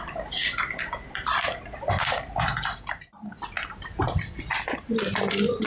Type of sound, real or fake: real